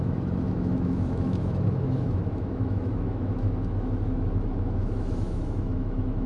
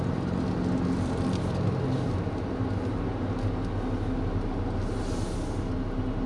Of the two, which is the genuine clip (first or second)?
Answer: second